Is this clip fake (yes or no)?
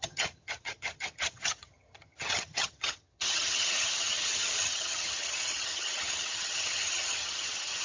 yes